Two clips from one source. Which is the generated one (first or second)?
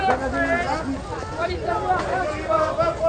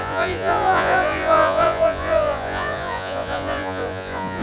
second